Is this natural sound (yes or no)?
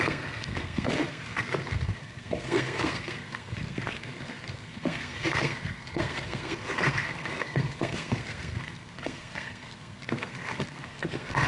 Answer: no